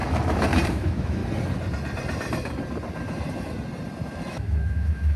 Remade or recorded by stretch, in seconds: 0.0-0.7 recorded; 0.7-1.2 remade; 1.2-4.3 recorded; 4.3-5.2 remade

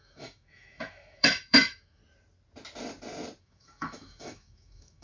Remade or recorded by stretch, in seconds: 0.0-2.0 remade; 2.0-3.4 recorded; 3.4-5.0 remade

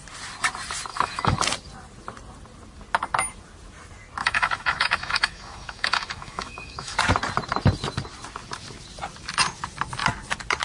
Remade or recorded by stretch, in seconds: 0.0-0.9 recorded; 0.9-1.4 remade; 1.4-4.2 recorded; 4.2-7.0 remade; 7.0-10.6 recorded

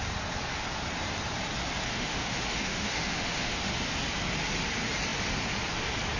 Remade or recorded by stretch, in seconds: 0.0-1.9 recorded; 1.9-3.7 remade; 3.7-6.2 recorded

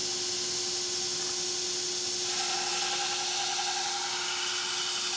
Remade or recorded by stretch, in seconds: 0.0-5.2 recorded

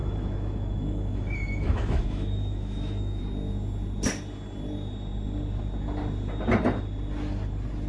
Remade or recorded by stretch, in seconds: 0.0-3.2 remade; 3.2-7.9 recorded

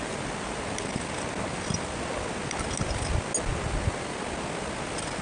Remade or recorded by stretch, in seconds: 0.0-5.2 recorded